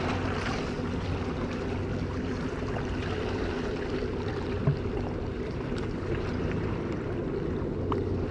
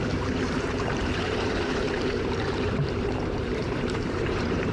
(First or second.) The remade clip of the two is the second